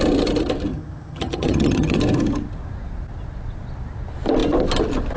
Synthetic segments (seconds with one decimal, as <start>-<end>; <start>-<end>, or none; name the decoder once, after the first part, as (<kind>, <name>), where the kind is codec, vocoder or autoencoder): 0.7-2.0 (vocoder, HiFi-GAN)